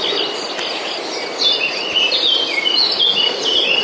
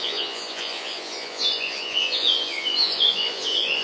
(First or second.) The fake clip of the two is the second